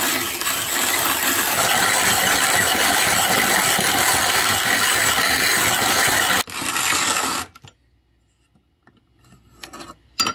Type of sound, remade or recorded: recorded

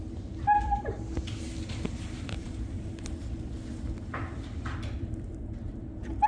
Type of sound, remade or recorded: remade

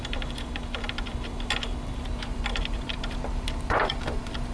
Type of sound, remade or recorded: remade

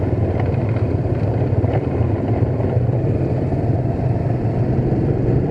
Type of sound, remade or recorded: remade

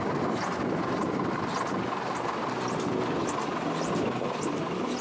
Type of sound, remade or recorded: recorded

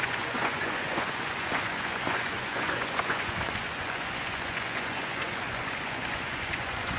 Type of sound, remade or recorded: remade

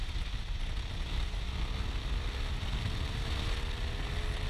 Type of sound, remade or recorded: recorded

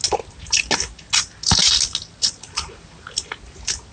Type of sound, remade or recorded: recorded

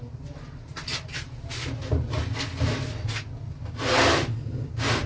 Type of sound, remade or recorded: recorded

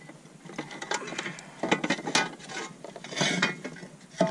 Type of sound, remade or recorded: recorded